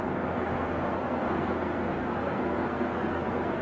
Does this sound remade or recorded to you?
remade